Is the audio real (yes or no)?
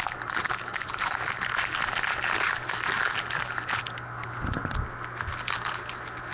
yes